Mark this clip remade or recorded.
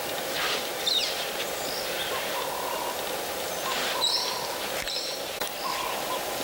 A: recorded